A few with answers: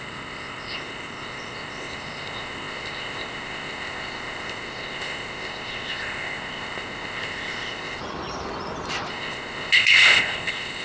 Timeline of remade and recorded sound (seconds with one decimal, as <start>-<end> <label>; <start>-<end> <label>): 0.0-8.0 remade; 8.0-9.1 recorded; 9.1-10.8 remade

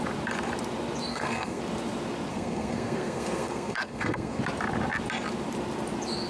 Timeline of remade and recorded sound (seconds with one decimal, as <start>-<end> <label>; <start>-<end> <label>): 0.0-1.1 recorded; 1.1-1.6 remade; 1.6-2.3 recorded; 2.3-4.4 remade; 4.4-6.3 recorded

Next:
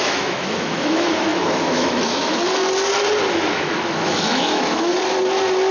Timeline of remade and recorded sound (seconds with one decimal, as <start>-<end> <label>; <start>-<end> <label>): 0.0-2.4 remade; 2.4-3.3 recorded; 3.3-4.9 remade; 4.9-5.7 recorded